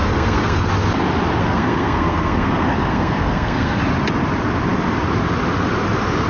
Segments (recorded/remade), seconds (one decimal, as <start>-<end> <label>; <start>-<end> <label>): 0.0-0.7 remade; 0.7-1.4 recorded; 1.4-3.8 remade; 3.8-6.3 recorded